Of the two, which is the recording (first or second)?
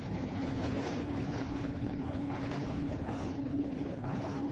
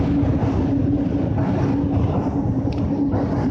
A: second